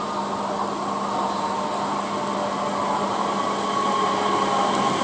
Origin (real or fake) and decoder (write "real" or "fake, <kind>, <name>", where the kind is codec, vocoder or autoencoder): real